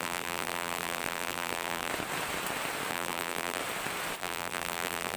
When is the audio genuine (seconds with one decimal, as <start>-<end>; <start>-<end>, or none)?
1.9-2.9; 3.6-4.2